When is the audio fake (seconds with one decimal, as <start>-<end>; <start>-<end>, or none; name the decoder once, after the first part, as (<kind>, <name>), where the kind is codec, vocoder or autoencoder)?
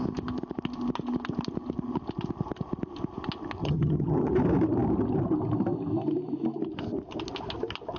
3.6-4.3 (vocoder, HiFi-GAN)